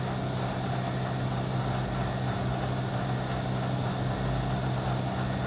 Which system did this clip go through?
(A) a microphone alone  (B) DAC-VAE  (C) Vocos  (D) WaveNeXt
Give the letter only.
A